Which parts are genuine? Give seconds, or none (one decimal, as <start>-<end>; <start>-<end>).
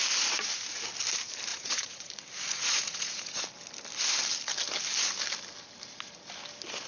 0.0-1.5; 2.1-2.5; 3.4-6.9